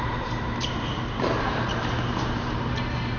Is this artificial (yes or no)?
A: yes